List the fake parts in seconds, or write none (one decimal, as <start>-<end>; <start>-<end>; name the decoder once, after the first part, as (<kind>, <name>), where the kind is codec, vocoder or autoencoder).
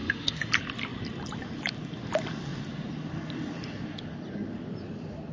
0.0-0.5 (autoencoder, DAC-VAE)